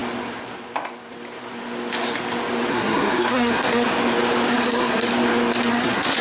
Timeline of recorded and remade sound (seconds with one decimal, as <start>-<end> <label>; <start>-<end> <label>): 0.0-2.7 recorded; 2.7-3.9 remade; 3.9-4.5 recorded; 4.5-5.1 remade; 5.1-5.7 recorded; 5.7-6.2 remade